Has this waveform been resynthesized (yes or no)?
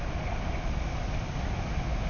no